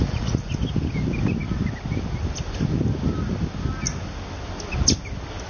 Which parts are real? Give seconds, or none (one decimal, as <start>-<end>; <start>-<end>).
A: 0.5-5.5